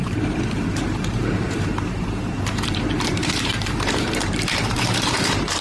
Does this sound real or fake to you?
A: fake